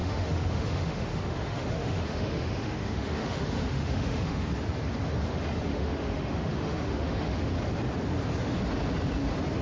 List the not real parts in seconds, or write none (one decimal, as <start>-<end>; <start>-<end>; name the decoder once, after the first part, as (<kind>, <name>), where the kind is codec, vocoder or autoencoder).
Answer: 0.0-4.5 (autoencoder, DAC-VAE); 5.7-7.5